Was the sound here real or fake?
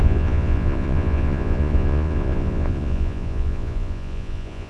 fake